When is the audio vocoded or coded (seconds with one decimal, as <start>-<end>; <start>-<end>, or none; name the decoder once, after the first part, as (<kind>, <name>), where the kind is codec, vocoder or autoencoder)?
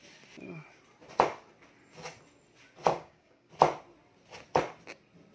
2.9-3.5 (codec, DAC)